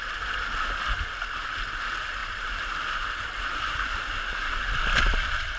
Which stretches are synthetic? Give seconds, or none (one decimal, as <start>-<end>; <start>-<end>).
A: 2.2-4.0